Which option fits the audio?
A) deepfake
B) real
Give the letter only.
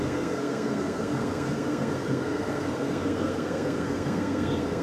A